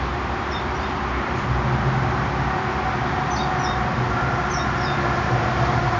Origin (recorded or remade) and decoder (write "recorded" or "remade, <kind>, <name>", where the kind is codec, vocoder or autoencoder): recorded